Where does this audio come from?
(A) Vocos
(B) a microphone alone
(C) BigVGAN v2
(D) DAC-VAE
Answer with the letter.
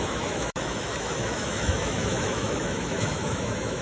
D